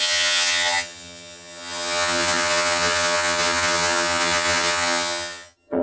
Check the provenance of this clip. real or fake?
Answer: fake